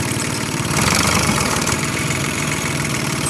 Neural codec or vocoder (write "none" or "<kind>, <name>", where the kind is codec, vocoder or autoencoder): vocoder, BigVGAN v2